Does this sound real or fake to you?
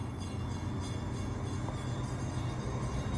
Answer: real